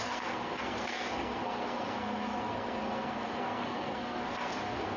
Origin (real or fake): fake